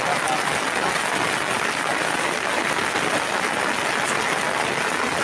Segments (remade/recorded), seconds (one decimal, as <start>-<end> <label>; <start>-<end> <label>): 0.0-5.2 recorded